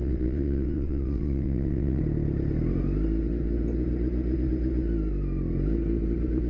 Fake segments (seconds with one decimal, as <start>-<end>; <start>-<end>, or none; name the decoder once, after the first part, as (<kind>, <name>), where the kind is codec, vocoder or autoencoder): 0.0-2.0 (vocoder, WaveNeXt)